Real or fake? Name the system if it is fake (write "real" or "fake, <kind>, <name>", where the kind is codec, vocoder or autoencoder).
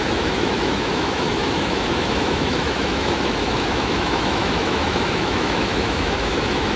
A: fake, autoencoder, DAC-VAE